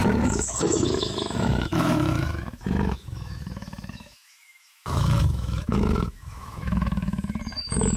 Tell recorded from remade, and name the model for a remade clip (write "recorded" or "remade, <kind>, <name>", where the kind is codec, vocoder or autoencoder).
remade, autoencoder, DAC-VAE